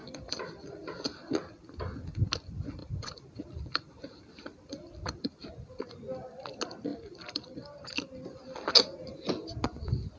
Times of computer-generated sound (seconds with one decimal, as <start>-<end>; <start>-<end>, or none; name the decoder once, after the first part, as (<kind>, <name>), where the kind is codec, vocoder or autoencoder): 0.0-1.5 (vocoder, BigVGAN v2); 2.8-5.9; 6.9-7.9